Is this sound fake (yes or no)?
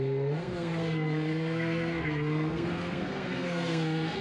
yes